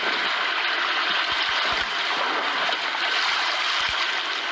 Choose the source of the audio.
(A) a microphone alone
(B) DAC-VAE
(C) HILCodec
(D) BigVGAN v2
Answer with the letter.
A